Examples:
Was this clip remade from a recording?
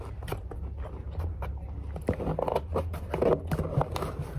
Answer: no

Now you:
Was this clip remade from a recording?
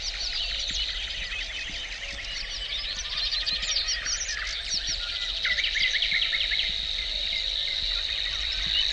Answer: no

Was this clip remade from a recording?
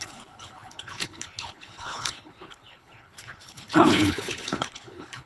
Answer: yes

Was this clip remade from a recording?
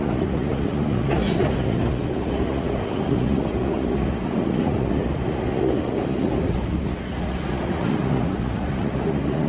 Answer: yes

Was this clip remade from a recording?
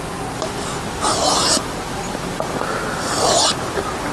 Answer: no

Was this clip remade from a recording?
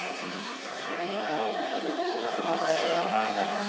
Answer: yes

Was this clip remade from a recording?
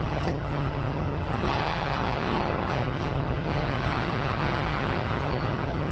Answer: yes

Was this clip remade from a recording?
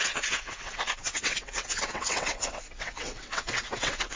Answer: yes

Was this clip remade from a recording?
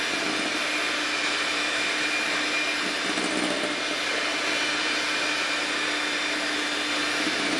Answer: no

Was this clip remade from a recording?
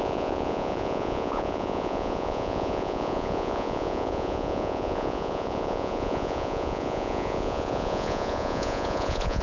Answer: yes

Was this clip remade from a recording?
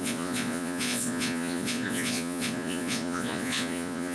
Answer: yes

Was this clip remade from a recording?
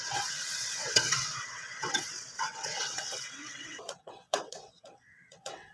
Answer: yes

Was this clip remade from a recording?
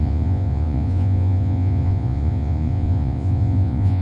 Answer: yes